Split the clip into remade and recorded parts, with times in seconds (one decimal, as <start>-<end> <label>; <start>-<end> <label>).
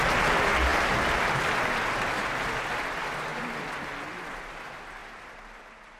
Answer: 0.0-6.0 recorded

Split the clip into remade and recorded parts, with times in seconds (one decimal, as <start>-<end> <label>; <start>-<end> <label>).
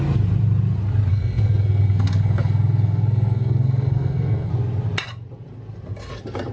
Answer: 0.0-1.1 recorded; 1.1-4.5 remade; 4.5-6.5 recorded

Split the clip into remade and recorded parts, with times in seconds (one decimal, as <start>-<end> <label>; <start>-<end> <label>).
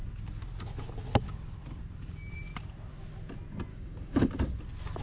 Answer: 0.0-3.7 recorded; 3.7-4.3 remade; 4.3-5.0 recorded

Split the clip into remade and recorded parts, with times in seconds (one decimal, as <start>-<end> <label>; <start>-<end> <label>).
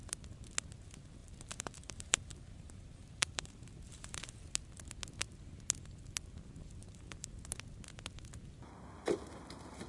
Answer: 0.0-1.2 recorded; 1.2-4.2 remade; 4.2-6.8 recorded; 6.8-7.3 remade; 7.3-9.9 recorded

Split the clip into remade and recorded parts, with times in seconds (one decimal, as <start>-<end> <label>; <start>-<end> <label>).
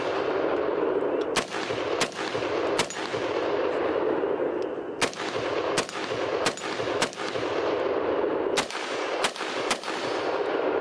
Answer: 0.0-10.8 recorded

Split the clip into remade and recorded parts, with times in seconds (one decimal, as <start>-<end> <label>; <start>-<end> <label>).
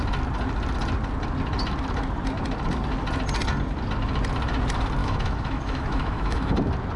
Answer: 0.0-5.0 recorded; 5.0-6.5 remade; 6.5-7.0 recorded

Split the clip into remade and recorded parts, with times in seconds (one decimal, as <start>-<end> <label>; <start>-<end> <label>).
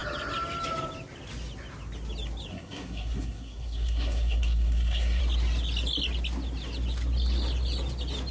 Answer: 0.0-2.5 recorded; 2.5-5.2 remade; 5.2-8.3 recorded